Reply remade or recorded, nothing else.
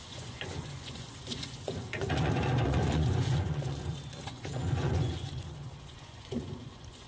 remade